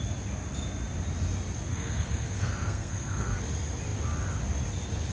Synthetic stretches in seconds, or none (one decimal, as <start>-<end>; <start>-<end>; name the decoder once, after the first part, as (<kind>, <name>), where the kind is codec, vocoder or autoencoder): 1.7-3.4 (codec, SNAC)